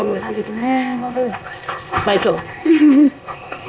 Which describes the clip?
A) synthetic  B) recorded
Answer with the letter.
A